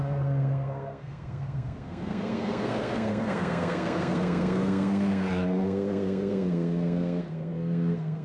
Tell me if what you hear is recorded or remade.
remade